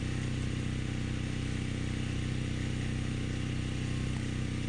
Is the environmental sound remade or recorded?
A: recorded